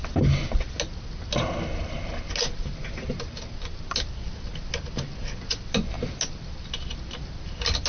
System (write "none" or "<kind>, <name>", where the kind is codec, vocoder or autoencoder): none